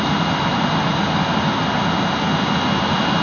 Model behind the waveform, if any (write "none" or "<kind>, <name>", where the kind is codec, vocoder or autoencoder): none